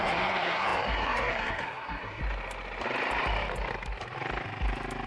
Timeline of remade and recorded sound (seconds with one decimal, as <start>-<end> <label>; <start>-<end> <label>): 0.0-2.2 remade; 2.2-5.1 recorded